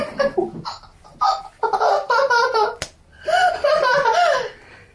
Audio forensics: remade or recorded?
remade